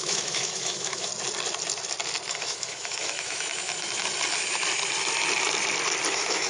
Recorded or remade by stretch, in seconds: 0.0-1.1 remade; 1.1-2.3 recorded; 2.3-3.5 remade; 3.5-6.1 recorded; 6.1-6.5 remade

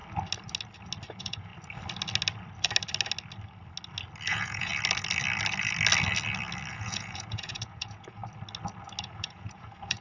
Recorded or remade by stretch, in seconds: 0.0-1.1 recorded; 1.1-1.5 remade; 1.5-4.3 recorded; 4.3-4.7 remade; 4.7-6.7 recorded; 6.7-8.2 remade; 8.2-9.0 recorded; 9.0-10.0 remade

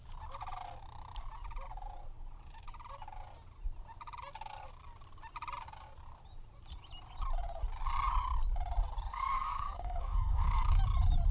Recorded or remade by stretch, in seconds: 0.0-9.1 recorded; 9.1-10.8 remade; 10.8-11.3 recorded

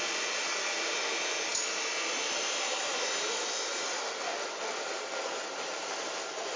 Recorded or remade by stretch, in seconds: 0.0-6.6 recorded

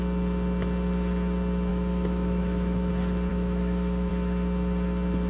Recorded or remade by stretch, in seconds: 0.0-1.7 recorded; 1.7-2.9 remade; 2.9-3.3 recorded; 3.3-4.1 remade; 4.1-5.3 recorded